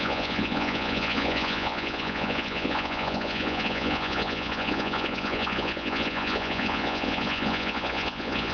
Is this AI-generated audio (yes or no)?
yes